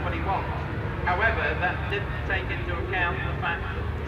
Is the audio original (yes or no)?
yes